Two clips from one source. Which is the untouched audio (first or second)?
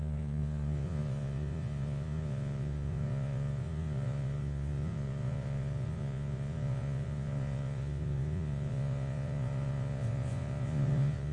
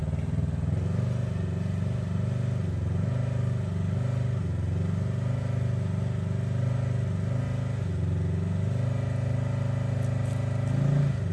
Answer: second